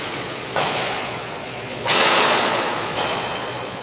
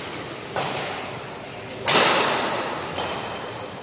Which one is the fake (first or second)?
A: first